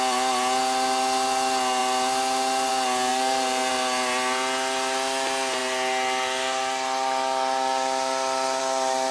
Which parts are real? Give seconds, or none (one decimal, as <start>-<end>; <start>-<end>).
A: 0.0-9.1

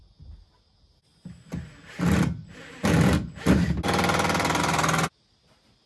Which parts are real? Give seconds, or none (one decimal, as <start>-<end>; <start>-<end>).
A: 0.0-5.9

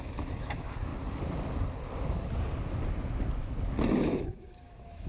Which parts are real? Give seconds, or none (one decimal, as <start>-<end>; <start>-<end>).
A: 0.9-4.0

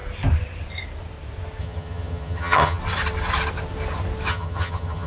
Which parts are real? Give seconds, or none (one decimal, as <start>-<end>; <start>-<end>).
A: 0.0-1.6; 2.8-4.3

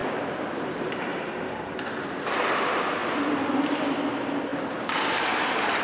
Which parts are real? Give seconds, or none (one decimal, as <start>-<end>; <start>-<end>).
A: 2.1-3.0; 3.6-4.5; 5.2-5.8

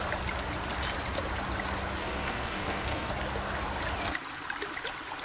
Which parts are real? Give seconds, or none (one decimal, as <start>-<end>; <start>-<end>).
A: 0.0-2.0; 3.1-5.2

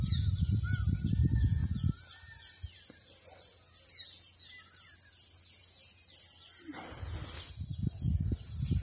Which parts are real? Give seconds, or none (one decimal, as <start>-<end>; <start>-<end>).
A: 0.0-8.8